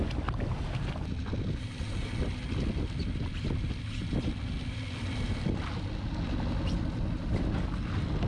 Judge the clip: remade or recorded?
recorded